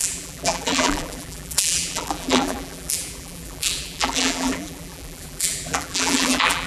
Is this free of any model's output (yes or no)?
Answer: no